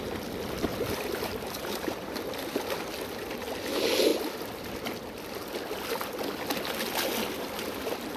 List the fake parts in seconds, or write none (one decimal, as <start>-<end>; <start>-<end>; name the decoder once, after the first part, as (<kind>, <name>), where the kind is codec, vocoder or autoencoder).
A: 0.7-2.2 (vocoder, BigVGAN v2)